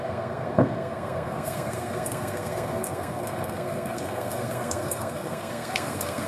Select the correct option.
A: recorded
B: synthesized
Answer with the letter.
B